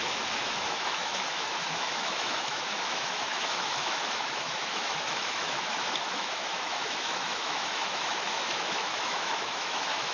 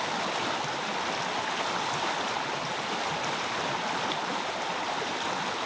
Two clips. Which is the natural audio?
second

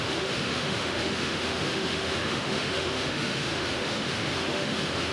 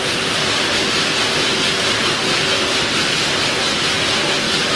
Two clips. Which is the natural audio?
second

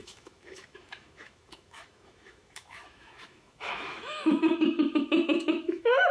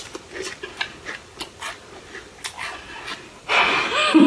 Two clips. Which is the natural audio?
second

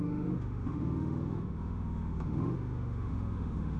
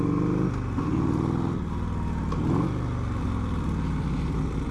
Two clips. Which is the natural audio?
second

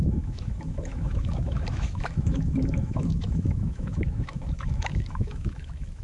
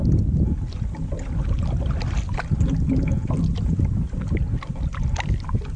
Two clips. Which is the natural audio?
second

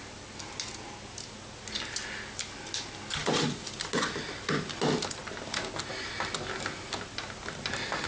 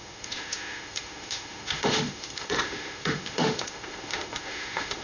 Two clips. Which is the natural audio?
first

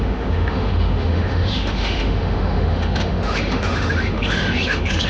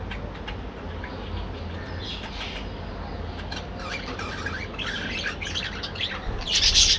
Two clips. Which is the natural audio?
second